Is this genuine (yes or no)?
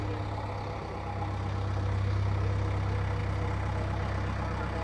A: yes